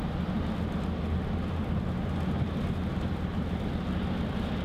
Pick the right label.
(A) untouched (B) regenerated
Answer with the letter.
A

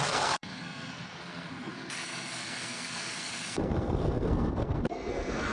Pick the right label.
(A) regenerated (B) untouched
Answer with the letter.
A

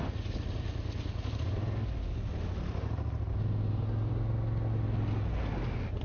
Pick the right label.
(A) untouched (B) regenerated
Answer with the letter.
A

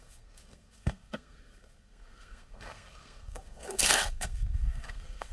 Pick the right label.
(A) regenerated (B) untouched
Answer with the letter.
A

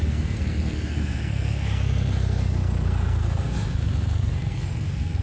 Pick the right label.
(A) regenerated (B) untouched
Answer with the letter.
A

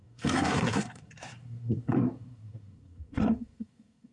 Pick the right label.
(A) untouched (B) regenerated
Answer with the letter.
B